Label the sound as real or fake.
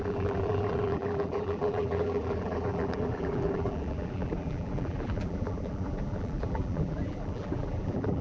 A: fake